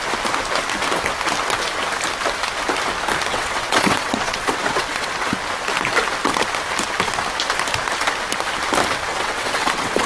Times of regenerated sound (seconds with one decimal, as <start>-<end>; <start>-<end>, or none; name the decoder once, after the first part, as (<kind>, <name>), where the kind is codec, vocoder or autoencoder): 3.3-5.1 (vocoder, WaveNeXt); 9.1-10.1